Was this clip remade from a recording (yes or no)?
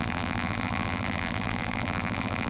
yes